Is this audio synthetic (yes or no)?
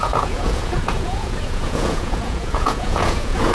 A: yes